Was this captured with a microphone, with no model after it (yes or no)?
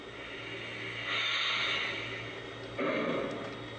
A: yes